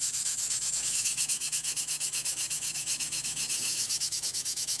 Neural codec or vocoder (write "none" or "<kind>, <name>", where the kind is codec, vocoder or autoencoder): autoencoder, DAC-VAE